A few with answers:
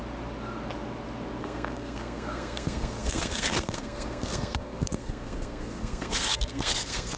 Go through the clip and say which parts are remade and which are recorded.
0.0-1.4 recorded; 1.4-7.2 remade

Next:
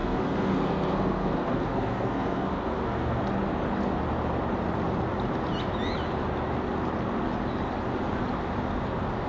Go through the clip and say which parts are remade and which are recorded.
0.0-3.2 remade; 3.2-9.3 recorded

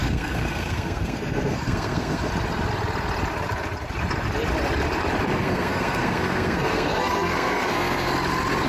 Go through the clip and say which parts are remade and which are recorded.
0.0-2.3 remade; 2.3-5.3 recorded; 5.3-8.1 remade; 8.1-8.7 recorded